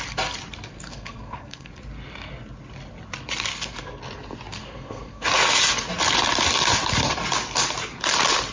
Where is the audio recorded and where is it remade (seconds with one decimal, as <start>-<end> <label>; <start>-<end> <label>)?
0.0-0.7 recorded; 0.7-1.7 remade; 1.7-3.5 recorded; 3.5-4.0 remade; 4.0-4.6 recorded; 4.6-5.3 remade; 5.3-8.5 recorded